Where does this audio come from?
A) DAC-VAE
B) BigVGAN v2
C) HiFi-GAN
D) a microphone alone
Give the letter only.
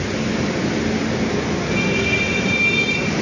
D